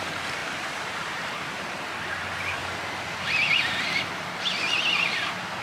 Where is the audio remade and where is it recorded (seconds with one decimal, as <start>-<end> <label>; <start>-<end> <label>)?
0.0-0.4 recorded; 0.4-2.1 remade; 2.1-5.6 recorded